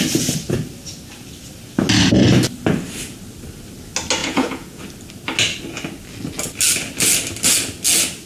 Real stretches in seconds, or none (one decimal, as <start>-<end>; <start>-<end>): 0.0-4.2; 4.8-8.3